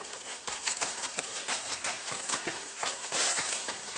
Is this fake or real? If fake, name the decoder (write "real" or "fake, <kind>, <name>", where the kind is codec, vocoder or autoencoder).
fake, codec, SNAC